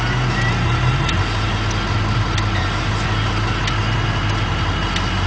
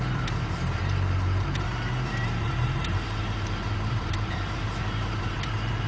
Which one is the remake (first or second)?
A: second